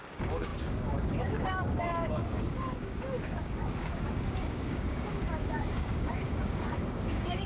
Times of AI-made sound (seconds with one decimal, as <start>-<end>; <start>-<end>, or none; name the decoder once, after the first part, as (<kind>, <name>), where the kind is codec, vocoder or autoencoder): 0.0-7.5 (codec, DAC)